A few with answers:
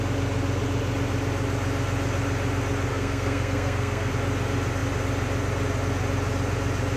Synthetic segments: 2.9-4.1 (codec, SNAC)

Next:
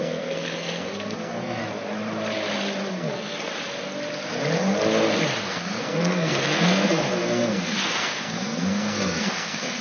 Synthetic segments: 0.0-1.6 (codec, SNAC); 2.9-3.5; 5.4-9.8